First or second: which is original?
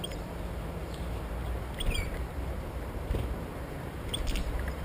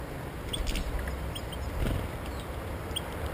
second